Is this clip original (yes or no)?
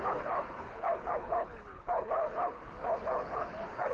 no